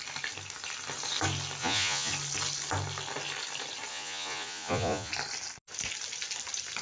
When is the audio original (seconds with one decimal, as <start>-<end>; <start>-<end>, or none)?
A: 0.0-1.6; 2.1-3.9; 5.1-6.8